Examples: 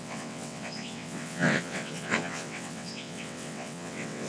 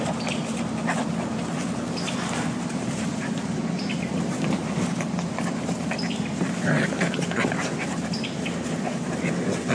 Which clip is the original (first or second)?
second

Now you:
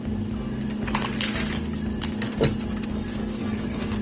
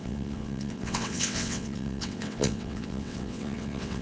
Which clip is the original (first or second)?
first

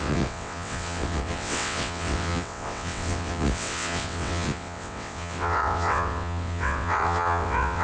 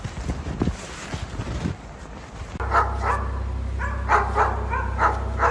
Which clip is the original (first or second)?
second